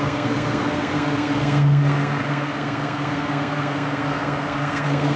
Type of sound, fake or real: fake